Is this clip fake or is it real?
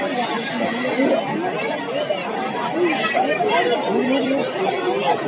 real